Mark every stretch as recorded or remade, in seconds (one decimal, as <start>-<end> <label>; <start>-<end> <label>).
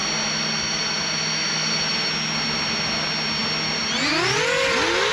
0.0-5.1 recorded